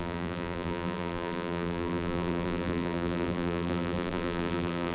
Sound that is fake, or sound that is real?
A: fake